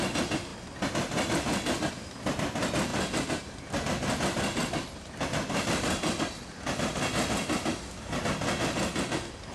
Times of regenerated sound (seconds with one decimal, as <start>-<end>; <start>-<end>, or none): none